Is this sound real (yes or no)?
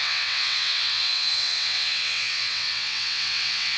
no